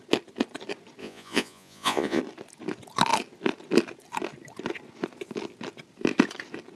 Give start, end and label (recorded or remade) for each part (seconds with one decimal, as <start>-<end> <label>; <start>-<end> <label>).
0.0-1.0 recorded; 1.0-2.2 remade; 2.2-6.8 recorded